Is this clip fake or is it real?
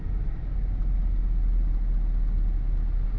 real